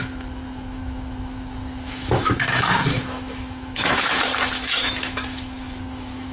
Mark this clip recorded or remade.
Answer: remade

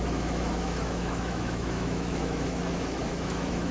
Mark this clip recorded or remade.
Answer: remade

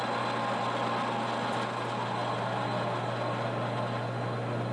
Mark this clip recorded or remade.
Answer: recorded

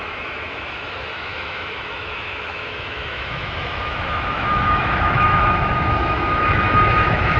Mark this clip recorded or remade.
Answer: remade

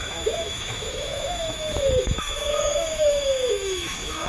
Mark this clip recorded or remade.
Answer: remade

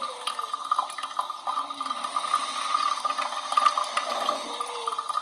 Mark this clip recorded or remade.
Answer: recorded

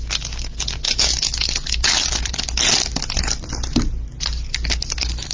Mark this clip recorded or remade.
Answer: recorded